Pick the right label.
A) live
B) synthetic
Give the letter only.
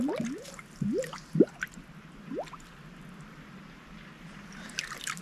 A